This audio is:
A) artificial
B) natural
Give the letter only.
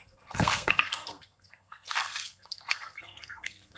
A